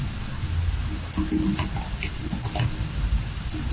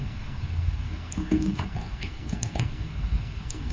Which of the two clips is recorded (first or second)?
first